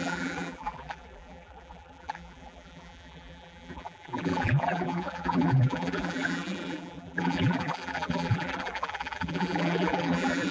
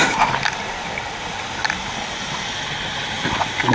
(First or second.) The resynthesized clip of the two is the first